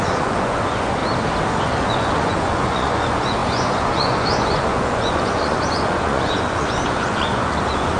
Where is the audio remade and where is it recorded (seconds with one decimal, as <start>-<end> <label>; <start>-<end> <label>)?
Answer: 0.0-1.0 remade; 1.0-1.5 recorded; 1.5-8.0 remade